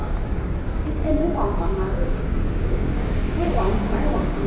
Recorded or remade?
remade